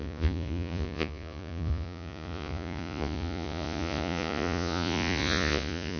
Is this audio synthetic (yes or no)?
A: yes